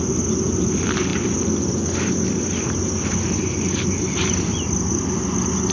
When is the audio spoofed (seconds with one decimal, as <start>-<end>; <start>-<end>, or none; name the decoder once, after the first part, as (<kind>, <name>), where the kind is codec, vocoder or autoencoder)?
none